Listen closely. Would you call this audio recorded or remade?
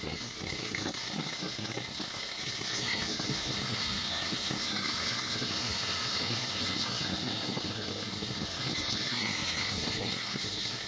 remade